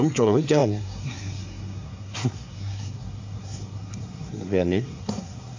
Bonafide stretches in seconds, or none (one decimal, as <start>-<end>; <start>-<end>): none